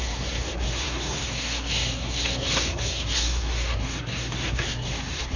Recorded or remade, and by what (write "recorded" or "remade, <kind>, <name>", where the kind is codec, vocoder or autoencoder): remade, codec, SNAC